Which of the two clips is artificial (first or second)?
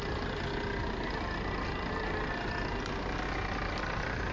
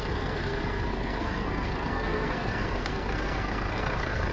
second